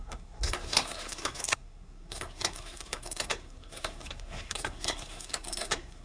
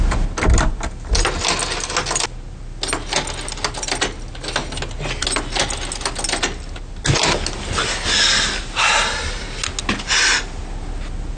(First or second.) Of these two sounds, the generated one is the first